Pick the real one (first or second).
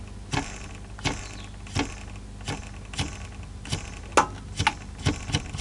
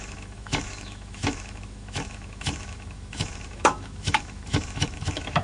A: first